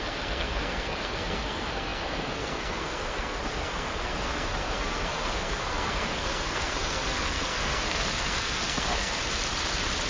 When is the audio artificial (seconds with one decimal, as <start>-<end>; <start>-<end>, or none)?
0.0-9.2